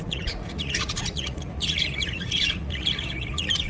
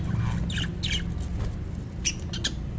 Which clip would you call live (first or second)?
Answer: second